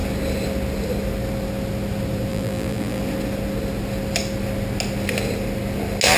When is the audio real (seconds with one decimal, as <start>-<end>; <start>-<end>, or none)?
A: 0.0-2.3; 3.0-6.2